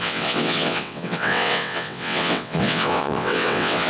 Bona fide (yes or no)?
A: no